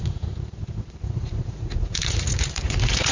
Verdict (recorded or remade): remade